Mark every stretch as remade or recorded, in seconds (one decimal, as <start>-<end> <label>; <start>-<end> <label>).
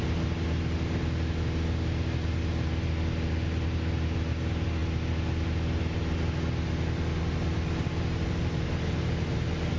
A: 0.0-9.8 recorded